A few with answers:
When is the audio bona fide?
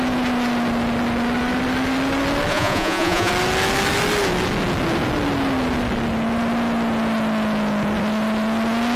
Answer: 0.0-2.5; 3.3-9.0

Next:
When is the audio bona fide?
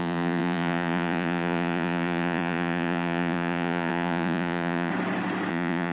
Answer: 4.9-5.5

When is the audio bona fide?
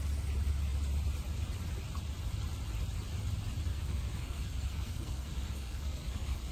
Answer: 0.0-3.7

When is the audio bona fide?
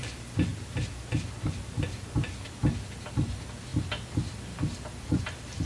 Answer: 0.0-5.7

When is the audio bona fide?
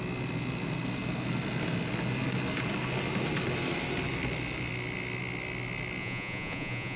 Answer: 0.0-6.0